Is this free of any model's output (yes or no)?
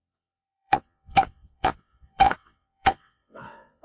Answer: no